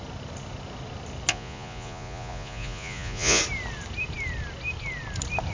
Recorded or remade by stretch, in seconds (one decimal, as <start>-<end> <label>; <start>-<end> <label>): 0.0-1.3 recorded; 1.3-3.4 remade; 3.4-5.5 recorded